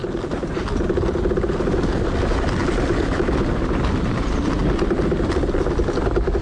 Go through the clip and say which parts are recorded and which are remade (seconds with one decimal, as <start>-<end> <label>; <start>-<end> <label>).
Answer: 0.0-6.4 recorded